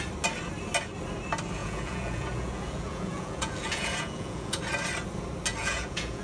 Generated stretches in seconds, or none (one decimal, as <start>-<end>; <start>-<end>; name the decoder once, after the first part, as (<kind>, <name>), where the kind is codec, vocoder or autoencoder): 1.6-4.6 (vocoder, Vocos); 5.5-6.2